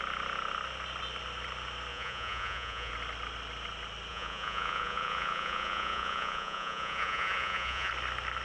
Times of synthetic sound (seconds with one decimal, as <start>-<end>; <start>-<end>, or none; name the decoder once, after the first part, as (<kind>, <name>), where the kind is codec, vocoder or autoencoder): 1.9-2.9 (vocoder, Vocos); 4.1-7.9